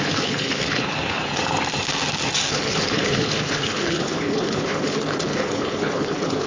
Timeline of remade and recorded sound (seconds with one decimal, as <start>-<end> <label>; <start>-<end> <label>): 0.0-1.3 remade; 1.3-2.5 recorded; 2.5-6.5 remade